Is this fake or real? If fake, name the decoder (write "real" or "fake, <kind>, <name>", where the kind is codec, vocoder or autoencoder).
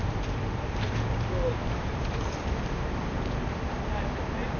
fake, vocoder, BigVGAN v2